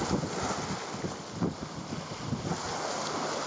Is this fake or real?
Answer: real